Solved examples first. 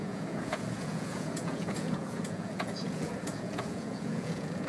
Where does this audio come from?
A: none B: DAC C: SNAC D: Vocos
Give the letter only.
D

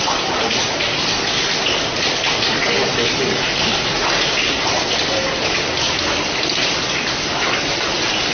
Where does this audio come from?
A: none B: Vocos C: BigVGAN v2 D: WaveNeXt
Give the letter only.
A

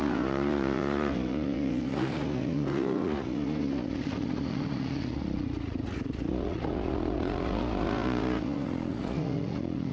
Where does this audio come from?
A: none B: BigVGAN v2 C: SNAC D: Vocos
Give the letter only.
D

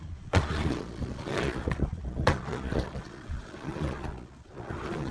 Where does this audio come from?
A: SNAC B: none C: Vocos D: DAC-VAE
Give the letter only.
C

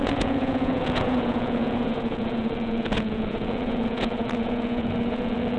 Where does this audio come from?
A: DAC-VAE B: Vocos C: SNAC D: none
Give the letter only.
B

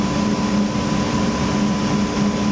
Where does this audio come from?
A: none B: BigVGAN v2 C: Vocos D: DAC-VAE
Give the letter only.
A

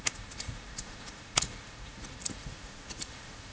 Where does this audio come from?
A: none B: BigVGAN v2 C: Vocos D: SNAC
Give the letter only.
C